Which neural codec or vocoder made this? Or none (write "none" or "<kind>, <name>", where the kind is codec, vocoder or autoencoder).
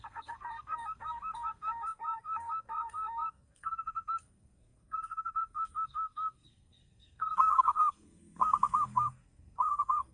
codec, SNAC